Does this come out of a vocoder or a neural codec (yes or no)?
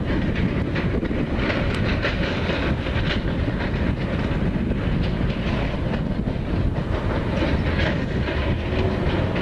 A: no